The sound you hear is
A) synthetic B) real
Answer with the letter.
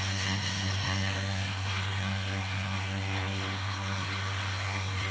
A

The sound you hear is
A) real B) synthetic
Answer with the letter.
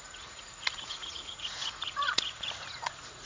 B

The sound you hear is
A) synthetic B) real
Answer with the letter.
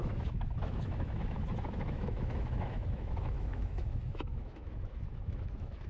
A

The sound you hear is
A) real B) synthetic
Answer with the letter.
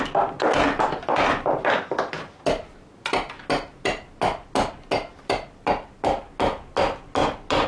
A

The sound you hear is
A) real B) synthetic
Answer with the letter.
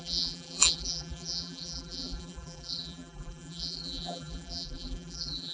B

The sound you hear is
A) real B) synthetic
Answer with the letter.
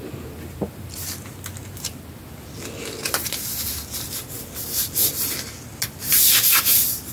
A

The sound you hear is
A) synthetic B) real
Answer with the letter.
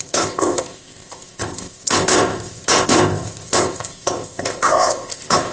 A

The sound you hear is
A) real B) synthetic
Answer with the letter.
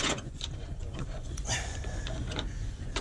B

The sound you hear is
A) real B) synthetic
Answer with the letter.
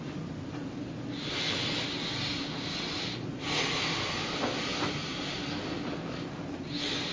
A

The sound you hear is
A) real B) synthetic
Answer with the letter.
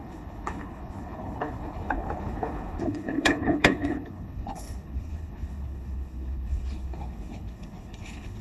B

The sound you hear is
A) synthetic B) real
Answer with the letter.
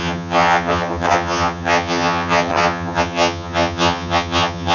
A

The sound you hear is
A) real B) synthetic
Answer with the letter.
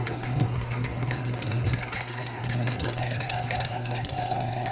B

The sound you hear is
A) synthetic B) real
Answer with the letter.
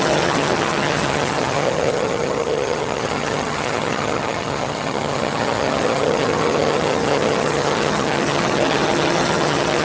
A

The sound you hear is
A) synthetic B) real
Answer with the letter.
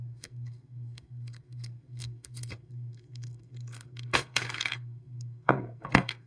A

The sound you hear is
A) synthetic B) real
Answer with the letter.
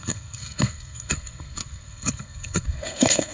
A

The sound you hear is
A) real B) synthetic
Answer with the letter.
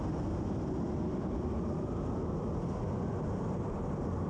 A